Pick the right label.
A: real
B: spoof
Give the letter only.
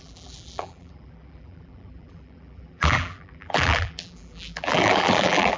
B